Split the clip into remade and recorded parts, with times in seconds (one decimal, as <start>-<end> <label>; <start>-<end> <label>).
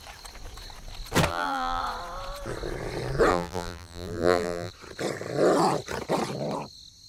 0.0-1.3 recorded; 1.3-1.8 remade; 1.8-3.3 recorded; 3.3-4.7 remade; 4.7-7.1 recorded